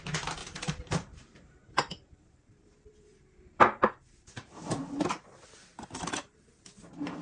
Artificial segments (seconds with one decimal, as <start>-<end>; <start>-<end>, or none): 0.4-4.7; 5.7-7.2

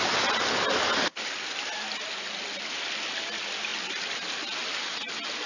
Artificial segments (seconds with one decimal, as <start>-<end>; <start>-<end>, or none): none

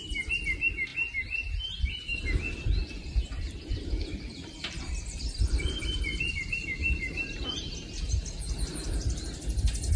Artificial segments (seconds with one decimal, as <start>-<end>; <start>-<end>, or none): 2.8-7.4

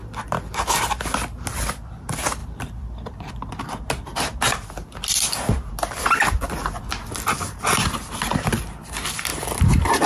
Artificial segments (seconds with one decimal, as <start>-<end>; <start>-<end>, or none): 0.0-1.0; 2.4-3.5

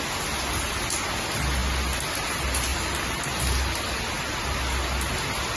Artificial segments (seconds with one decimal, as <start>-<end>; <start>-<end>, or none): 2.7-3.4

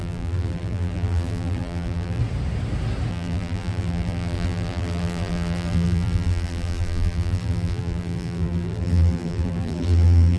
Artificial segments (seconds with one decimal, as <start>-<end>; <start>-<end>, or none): 0.0-2.2; 3.1-10.4

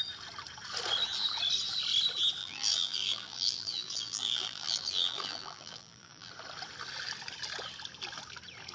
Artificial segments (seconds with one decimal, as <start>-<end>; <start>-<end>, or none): 2.4-6.3

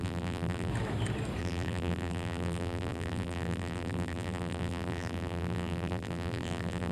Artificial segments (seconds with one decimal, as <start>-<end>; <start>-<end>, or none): 0.0-0.7; 1.4-6.9